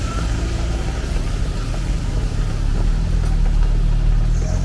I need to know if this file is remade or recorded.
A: recorded